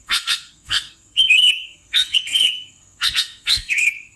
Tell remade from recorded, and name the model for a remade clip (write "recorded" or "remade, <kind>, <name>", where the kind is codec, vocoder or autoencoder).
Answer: remade, codec, SNAC